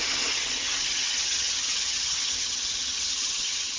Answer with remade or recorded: remade